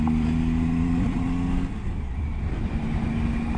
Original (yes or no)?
yes